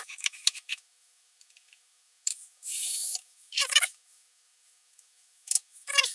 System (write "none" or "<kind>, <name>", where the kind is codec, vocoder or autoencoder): autoencoder, DAC-VAE